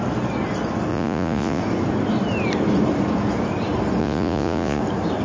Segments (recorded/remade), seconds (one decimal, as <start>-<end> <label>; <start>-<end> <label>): 0.0-0.9 recorded; 0.9-1.6 remade; 1.6-4.0 recorded; 4.0-4.8 remade; 4.8-5.2 recorded